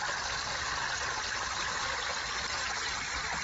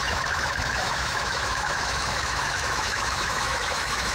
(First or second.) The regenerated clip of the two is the second